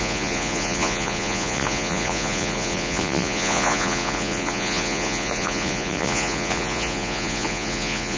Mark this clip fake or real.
fake